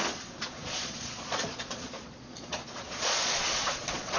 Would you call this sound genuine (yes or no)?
no